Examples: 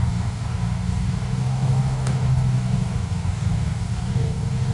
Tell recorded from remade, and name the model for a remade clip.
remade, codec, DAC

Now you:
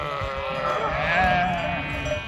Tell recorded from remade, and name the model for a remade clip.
recorded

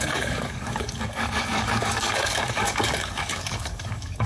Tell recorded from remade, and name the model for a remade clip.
remade, codec, DAC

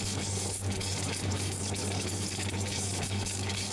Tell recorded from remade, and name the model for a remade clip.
remade, codec, DAC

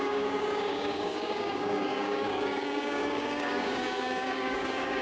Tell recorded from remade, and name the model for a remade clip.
remade, codec, DAC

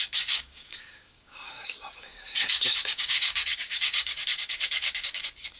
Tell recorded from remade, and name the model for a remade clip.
remade, codec, DAC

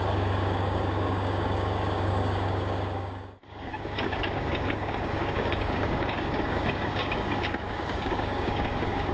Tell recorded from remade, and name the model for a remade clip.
remade, codec, DAC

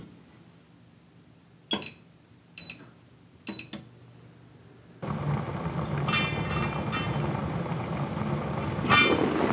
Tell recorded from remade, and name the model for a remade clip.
recorded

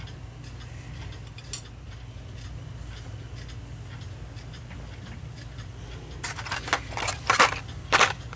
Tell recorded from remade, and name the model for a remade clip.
recorded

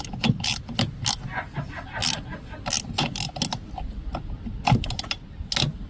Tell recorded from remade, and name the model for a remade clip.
recorded